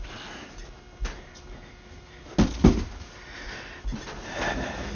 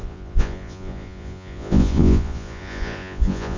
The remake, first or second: second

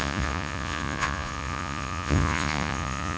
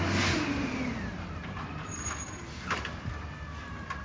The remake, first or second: first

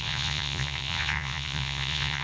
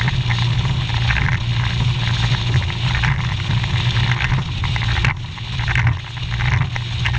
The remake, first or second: first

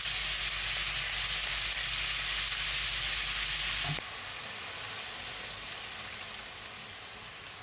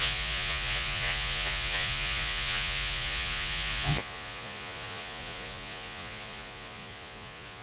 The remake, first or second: second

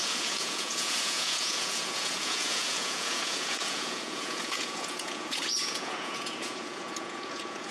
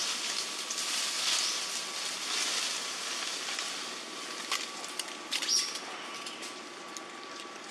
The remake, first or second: first